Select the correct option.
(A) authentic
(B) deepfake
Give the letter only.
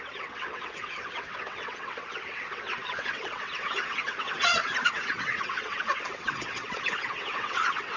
B